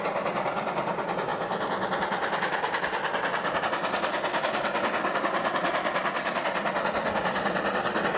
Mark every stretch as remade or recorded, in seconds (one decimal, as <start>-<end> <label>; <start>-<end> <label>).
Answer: 0.0-8.2 recorded